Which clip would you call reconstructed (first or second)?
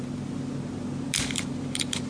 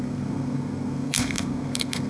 second